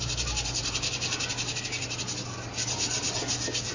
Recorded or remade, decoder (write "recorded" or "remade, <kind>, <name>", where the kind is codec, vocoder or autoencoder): recorded